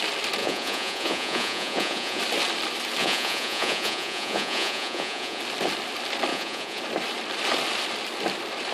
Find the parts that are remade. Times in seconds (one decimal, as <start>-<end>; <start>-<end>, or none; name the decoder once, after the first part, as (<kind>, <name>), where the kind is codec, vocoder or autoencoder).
0.4-2.2 (vocoder, Vocos); 3.0-5.4; 6.3-6.8